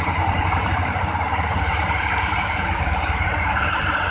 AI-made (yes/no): yes